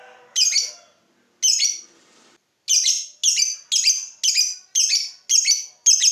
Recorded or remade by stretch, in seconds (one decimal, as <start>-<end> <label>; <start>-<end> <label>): 0.0-6.1 recorded